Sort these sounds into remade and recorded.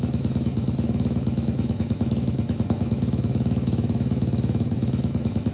remade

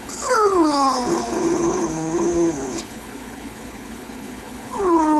remade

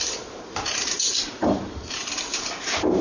remade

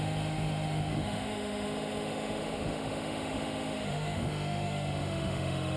remade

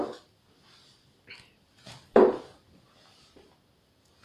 recorded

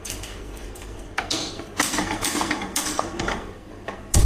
remade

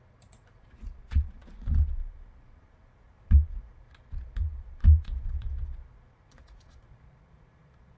remade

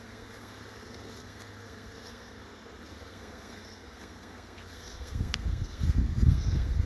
remade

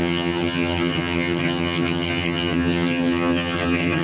remade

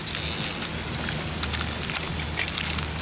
recorded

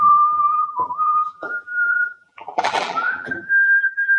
remade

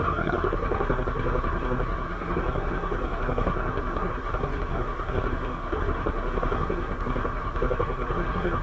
remade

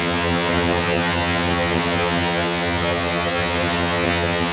remade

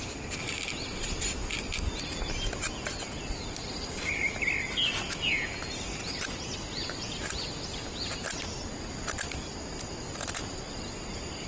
recorded